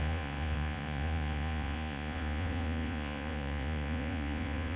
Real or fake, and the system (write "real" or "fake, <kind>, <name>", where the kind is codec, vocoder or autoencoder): fake, vocoder, Vocos